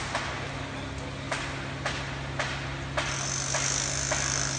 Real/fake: real